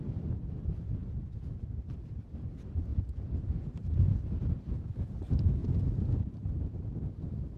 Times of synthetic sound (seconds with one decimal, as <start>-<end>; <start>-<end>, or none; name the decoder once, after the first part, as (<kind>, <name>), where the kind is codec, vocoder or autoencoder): 2.9-3.4 (vocoder, Vocos); 5.6-6.2